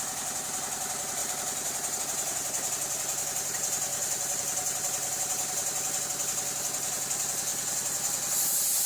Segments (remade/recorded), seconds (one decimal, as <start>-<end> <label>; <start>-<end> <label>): 0.0-1.2 recorded; 1.2-2.0 remade; 2.0-3.9 recorded; 3.9-6.0 remade; 6.0-8.9 recorded